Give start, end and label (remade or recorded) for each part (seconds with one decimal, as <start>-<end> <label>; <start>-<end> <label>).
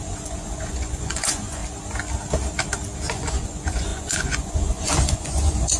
0.0-1.6 remade; 1.6-3.1 recorded; 3.1-5.8 remade